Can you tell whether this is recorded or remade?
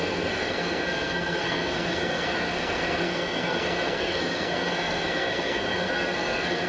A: remade